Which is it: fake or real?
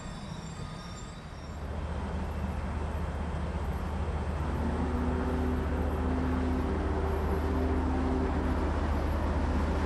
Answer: real